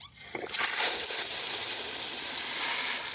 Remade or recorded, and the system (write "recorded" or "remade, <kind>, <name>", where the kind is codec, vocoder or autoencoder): recorded